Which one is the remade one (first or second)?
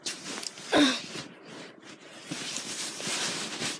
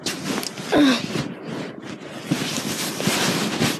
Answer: first